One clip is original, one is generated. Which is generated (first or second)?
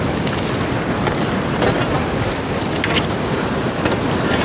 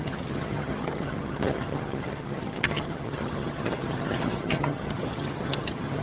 second